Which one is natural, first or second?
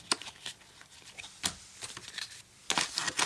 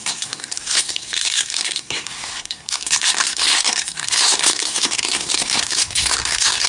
first